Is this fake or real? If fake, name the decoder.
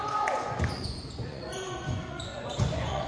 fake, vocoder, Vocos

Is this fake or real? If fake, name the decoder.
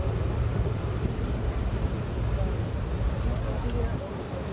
real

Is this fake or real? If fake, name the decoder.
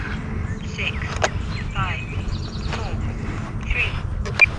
real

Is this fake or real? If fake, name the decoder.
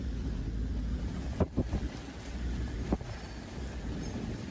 real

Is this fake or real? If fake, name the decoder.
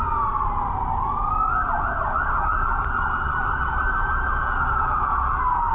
real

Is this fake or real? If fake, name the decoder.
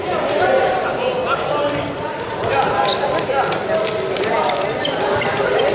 real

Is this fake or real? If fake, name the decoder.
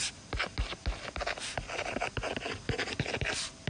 real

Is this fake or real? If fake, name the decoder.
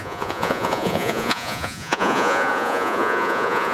fake, vocoder, Vocos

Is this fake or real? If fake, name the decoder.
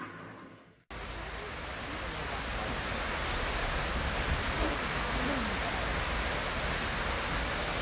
real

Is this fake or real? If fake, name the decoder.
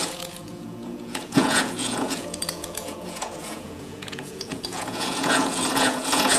fake, vocoder, Vocos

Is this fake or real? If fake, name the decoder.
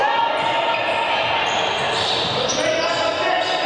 real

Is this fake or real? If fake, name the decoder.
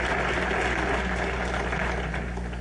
real